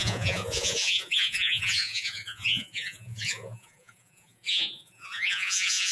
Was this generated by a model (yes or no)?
yes